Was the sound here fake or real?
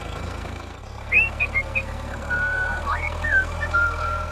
fake